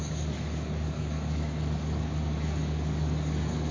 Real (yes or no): no